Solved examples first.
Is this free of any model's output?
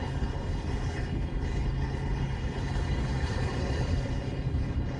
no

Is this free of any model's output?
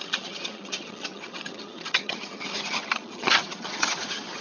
no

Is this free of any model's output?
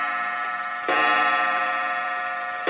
no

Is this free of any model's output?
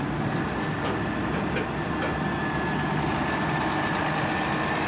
yes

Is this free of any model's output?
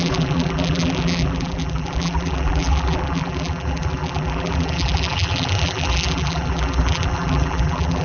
no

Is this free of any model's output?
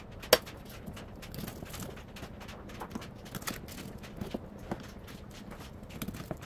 yes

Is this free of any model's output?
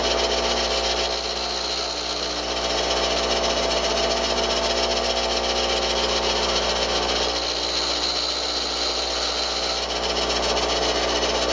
yes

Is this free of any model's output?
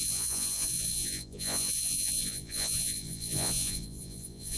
no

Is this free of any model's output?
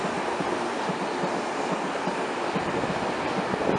yes